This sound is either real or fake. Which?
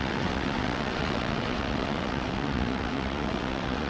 fake